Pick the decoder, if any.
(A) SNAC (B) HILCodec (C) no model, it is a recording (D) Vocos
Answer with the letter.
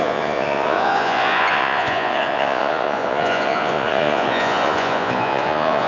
D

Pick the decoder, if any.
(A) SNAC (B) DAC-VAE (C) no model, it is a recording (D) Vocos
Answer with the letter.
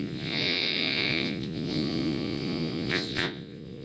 D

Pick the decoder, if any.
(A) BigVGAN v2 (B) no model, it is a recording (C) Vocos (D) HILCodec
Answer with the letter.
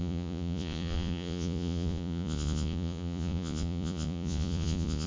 C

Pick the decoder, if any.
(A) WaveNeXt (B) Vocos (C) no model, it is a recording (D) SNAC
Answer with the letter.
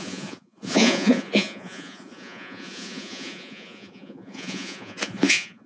B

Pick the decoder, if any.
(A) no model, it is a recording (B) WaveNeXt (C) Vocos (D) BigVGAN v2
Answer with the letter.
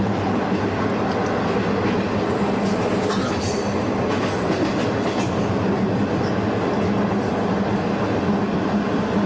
A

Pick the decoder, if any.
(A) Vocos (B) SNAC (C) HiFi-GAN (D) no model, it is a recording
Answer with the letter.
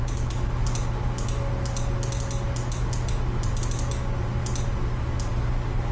D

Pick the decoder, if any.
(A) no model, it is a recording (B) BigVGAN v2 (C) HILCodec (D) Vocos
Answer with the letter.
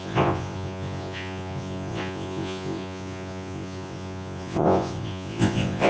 D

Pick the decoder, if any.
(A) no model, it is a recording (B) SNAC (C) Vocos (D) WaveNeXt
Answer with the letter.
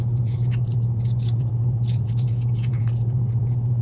C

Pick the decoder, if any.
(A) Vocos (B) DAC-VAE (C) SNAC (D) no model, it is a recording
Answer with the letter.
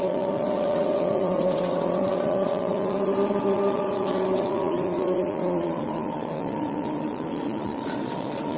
A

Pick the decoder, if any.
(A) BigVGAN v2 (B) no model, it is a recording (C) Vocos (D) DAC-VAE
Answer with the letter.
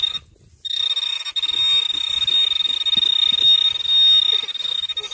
B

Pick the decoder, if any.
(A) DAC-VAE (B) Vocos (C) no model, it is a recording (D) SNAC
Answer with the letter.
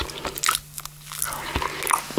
C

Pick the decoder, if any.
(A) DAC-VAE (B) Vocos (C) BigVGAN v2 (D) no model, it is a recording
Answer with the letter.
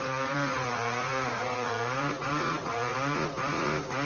B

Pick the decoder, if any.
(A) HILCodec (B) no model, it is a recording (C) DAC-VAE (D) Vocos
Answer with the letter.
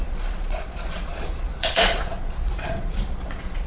D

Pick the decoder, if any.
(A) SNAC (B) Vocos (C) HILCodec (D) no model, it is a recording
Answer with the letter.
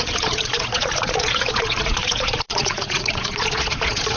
B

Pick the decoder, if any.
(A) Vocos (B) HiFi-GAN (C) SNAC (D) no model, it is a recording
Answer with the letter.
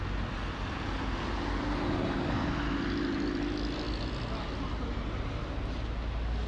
D